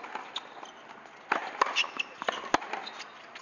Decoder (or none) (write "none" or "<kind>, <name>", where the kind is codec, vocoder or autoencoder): none